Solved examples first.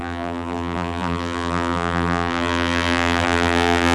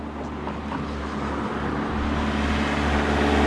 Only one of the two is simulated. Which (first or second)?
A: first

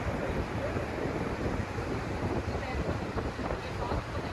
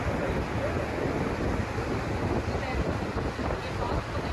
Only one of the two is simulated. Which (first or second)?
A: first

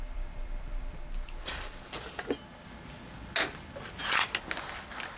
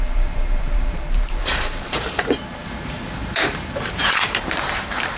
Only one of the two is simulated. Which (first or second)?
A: second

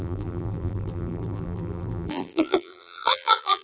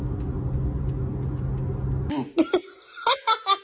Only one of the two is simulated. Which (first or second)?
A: first